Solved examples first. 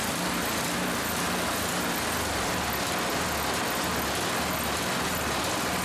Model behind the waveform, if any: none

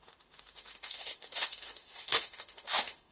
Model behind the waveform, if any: autoencoder, DAC-VAE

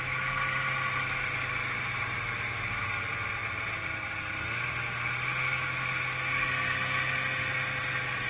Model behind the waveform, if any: none